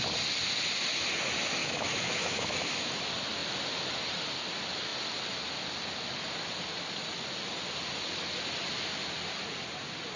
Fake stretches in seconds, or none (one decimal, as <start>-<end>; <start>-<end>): 1.6-3.0